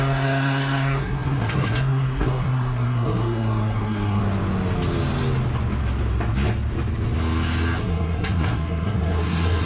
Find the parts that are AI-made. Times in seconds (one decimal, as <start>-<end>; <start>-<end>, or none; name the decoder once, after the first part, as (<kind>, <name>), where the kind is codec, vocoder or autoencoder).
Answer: 0.0-4.2 (codec, SNAC); 7.8-9.7